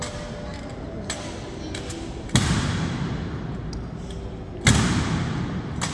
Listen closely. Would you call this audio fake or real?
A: real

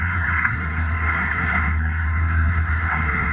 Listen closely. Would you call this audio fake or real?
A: fake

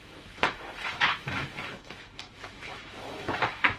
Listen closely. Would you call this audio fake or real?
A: fake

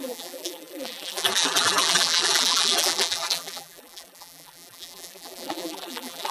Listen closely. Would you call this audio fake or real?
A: fake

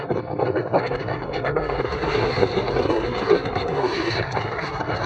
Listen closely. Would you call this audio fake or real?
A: fake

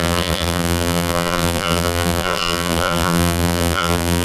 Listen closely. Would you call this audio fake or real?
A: fake